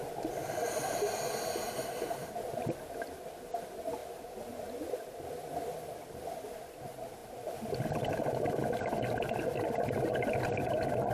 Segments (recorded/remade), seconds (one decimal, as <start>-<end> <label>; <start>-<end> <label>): 0.0-11.1 recorded

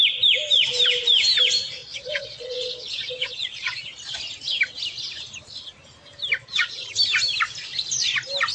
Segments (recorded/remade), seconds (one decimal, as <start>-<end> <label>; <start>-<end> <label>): 0.0-1.8 recorded; 1.8-4.2 remade; 4.2-6.4 recorded; 6.4-6.9 remade; 6.9-8.5 recorded

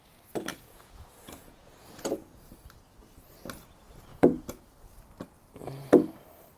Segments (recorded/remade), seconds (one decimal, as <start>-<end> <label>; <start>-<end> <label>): 0.0-0.5 recorded; 0.5-2.5 remade; 2.5-4.1 recorded; 4.1-4.9 remade; 4.9-6.6 recorded

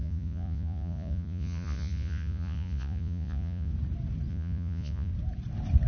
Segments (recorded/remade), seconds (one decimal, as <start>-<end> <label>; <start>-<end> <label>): 0.0-3.7 remade; 3.7-4.3 recorded; 4.3-5.1 remade; 5.1-5.9 recorded

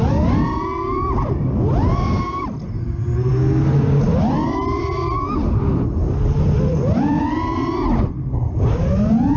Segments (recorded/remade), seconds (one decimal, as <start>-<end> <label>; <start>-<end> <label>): 0.0-9.4 recorded

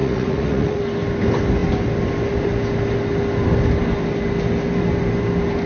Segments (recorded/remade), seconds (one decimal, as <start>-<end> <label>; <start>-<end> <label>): 0.0-0.8 remade; 0.8-5.7 recorded

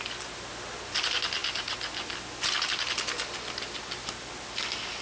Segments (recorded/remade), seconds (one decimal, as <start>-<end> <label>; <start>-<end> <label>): 0.0-5.0 recorded

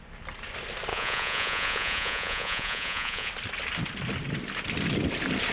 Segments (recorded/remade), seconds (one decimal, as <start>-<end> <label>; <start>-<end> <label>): 0.0-0.9 recorded; 0.9-3.3 remade; 3.3-5.5 recorded